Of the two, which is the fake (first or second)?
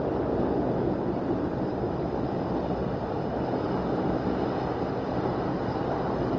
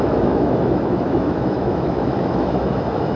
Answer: second